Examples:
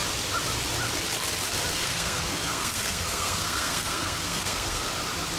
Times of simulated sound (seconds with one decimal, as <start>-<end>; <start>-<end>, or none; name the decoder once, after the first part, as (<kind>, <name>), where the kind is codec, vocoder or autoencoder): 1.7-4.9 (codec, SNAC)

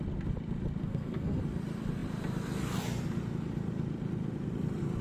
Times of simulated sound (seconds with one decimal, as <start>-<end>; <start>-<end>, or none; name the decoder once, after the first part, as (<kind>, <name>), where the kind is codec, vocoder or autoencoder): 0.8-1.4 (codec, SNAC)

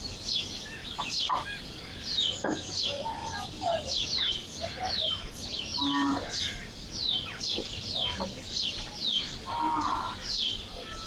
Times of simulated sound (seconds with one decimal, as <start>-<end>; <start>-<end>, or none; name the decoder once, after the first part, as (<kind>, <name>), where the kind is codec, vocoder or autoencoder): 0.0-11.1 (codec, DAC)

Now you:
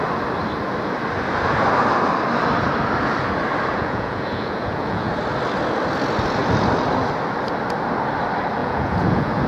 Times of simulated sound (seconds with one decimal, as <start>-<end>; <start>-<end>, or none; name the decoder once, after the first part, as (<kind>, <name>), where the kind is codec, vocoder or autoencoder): 3.7-5.1 (vocoder, Vocos); 8.6-9.5